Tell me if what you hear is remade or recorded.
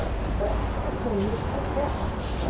recorded